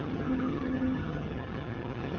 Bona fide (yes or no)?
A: no